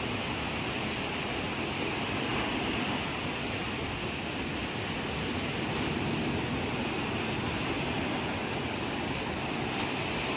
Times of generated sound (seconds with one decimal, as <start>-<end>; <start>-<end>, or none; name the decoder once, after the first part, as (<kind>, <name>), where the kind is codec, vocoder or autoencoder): none